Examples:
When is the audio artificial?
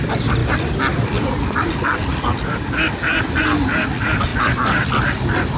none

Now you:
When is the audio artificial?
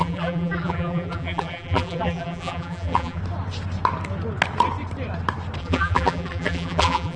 0.0-3.2 (vocoder, BigVGAN v2); 5.6-7.2